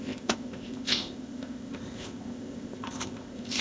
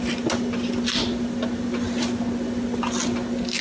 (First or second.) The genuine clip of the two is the second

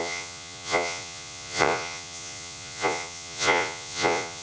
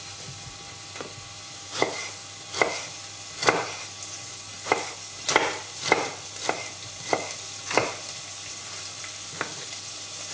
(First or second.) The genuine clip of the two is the second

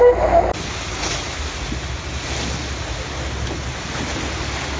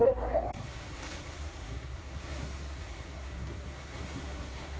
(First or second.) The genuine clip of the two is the first